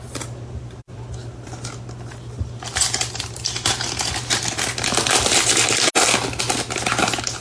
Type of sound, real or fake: real